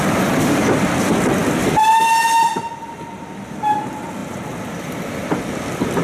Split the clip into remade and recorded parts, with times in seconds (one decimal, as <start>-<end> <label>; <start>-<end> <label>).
0.0-1.4 recorded; 1.4-2.0 remade; 2.0-4.2 recorded; 4.2-4.9 remade; 4.9-6.0 recorded